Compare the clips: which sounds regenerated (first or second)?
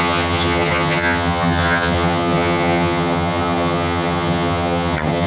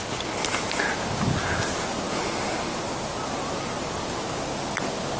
first